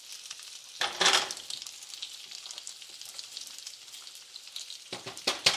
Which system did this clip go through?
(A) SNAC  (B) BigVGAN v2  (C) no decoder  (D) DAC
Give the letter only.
C